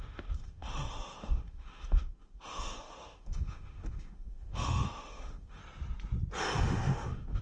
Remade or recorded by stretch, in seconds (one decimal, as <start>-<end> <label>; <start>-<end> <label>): 0.0-5.6 remade; 5.6-6.6 recorded; 6.6-7.4 remade